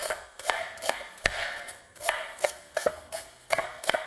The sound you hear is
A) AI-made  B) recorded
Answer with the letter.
A